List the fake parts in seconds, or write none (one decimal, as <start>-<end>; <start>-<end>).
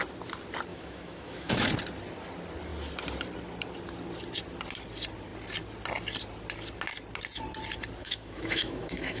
0.7-1.7; 8.0-9.2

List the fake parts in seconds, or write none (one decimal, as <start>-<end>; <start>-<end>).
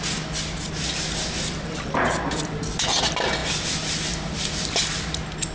none